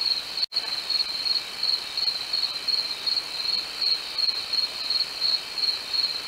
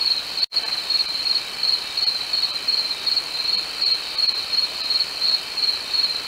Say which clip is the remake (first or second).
second